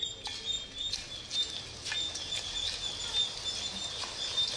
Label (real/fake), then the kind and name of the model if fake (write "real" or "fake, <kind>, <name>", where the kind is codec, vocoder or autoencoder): real